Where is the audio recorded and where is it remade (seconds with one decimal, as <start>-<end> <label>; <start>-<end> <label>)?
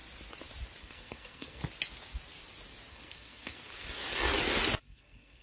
0.0-0.8 recorded; 0.8-1.6 remade; 1.6-2.9 recorded; 2.9-4.0 remade; 4.0-4.8 recorded; 4.8-5.4 remade